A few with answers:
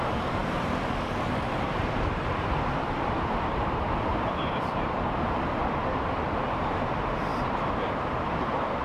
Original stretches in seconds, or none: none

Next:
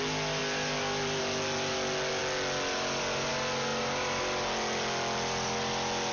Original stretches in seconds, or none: 0.0-0.4; 1.2-3.7; 4.2-6.1

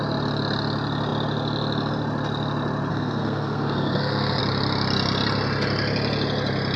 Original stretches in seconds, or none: 0.0-2.9; 4.4-6.8

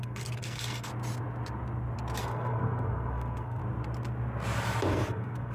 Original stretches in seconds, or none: 0.9-2.2; 3.6-4.9

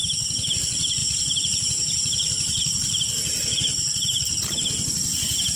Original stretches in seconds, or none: 0.0-1.0; 4.4-5.6

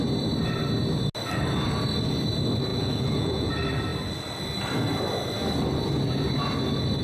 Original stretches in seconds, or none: 0.0-2.7; 3.5-7.0